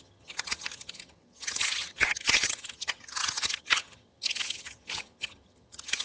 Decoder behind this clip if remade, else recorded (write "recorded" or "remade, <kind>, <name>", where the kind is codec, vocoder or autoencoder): remade, vocoder, HiFi-GAN